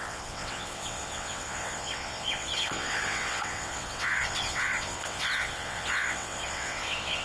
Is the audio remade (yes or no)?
yes